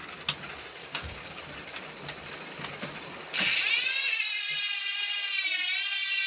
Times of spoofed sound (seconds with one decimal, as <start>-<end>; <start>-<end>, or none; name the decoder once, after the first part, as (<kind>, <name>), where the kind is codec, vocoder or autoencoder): 0.8-1.4 (codec, DAC)